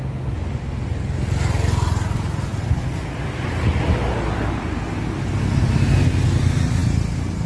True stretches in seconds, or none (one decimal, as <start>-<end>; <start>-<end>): 0.0-7.5